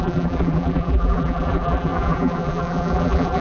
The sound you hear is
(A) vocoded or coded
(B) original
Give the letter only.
A